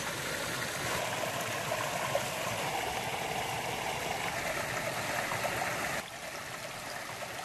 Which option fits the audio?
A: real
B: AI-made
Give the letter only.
A